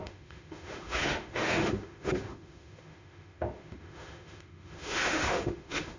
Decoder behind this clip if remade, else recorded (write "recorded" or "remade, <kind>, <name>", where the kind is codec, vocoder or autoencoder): remade, autoencoder, DAC-VAE